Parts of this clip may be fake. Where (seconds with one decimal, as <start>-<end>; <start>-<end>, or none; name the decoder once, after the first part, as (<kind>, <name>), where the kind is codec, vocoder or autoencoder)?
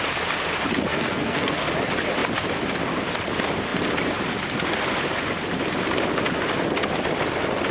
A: 0.9-1.6 (codec, SNAC)